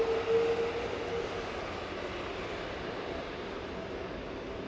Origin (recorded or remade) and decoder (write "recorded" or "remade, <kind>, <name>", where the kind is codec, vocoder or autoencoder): recorded